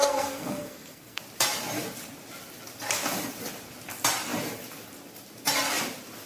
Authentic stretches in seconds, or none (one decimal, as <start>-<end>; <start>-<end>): 1.2-6.3